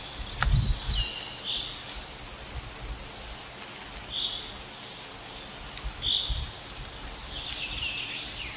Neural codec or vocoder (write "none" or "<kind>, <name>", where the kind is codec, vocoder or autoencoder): none